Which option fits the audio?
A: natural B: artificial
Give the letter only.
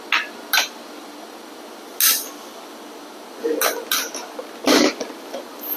A